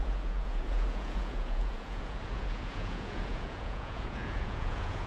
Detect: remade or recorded remade